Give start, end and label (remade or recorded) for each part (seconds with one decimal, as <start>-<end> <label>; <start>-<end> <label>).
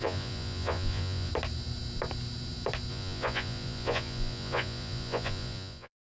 0.0-1.3 remade; 1.3-2.9 recorded; 2.9-6.1 remade